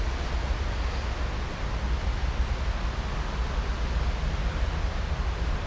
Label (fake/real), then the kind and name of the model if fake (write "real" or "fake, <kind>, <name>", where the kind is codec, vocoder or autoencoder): real